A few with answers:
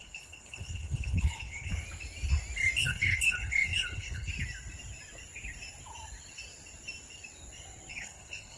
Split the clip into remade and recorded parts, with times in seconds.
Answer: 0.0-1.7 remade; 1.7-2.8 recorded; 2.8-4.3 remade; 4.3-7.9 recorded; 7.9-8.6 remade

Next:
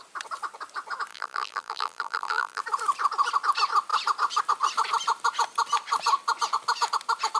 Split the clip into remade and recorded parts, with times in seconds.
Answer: 0.0-1.1 recorded; 1.1-2.6 remade; 2.6-7.4 recorded

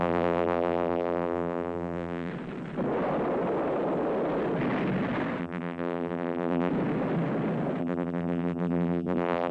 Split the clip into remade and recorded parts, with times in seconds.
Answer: 0.0-2.3 remade; 2.3-5.4 recorded; 5.4-6.7 remade; 6.7-7.8 recorded; 7.8-9.5 remade